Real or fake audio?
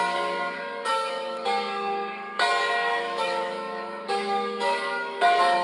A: fake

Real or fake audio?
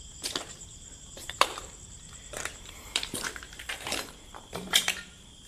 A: fake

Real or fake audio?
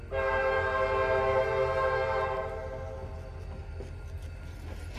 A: real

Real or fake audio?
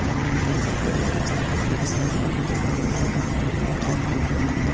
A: fake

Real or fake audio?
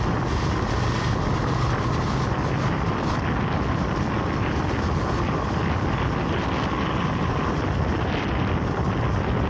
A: real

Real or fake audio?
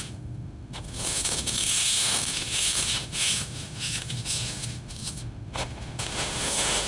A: fake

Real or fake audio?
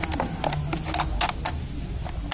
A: real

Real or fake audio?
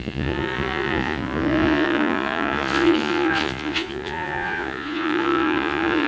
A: fake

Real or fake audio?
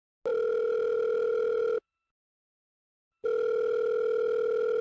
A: real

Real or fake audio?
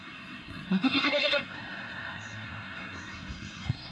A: fake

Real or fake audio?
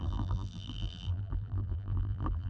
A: fake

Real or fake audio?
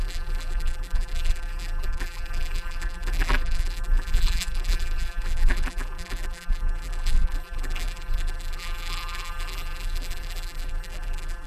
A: fake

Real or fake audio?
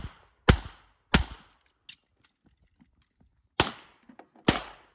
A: real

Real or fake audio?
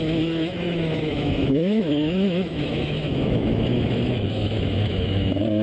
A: fake